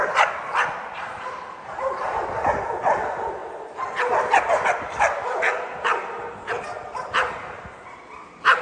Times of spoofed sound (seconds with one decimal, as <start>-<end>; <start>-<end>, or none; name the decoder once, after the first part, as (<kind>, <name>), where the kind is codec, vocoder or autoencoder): 0.0-3.4 (vocoder, BigVGAN v2); 6.6-8.6